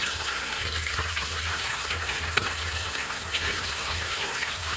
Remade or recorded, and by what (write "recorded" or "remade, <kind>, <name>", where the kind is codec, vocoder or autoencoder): remade, codec, SNAC